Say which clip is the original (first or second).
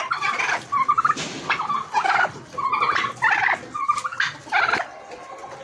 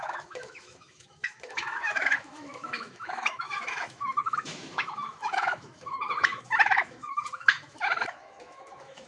first